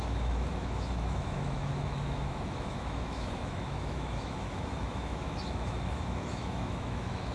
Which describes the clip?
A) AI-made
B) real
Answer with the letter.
A